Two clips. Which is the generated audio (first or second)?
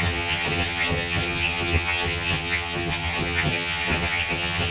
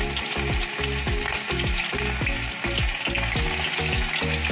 first